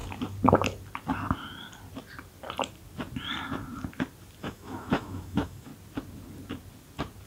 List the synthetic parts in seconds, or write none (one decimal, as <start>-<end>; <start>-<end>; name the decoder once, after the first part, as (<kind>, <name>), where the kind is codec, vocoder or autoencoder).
4.4-5.7 (autoencoder, DAC-VAE)

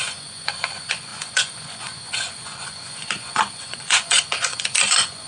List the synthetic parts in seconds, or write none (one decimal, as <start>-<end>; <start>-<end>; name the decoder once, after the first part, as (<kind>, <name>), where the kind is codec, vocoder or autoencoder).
0.0-5.3 (vocoder, Vocos)

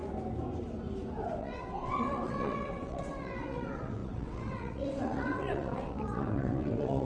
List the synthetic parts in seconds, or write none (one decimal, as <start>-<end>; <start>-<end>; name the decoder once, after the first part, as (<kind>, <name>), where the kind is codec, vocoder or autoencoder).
1.4-7.0 (vocoder, WaveNeXt)

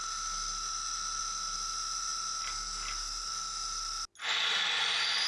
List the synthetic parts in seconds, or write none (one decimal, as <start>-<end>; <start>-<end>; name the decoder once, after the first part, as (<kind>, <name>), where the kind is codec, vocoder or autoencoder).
none

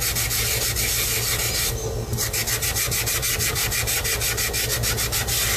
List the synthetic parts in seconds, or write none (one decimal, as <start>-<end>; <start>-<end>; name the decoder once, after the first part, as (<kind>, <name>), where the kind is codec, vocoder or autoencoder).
none

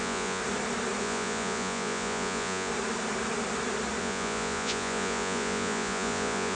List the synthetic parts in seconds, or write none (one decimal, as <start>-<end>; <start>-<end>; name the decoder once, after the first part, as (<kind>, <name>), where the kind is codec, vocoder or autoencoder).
0.0-0.4 (vocoder, Vocos); 1.0-2.7; 4.0-6.5

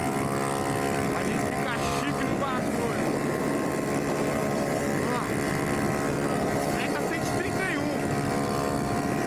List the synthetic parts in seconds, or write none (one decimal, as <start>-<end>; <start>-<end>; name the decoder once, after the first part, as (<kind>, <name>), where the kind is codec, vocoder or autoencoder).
none